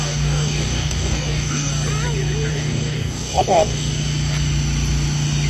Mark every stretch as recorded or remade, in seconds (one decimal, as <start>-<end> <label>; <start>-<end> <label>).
0.0-1.7 remade; 1.7-2.5 recorded; 2.5-3.9 remade; 3.9-5.5 recorded